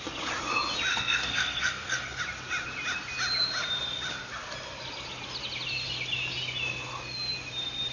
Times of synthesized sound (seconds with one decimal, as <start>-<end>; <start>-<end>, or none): 0.9-2.2